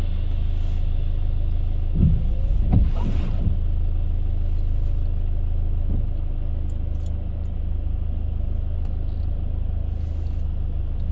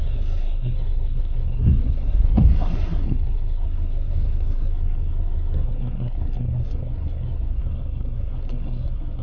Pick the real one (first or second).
first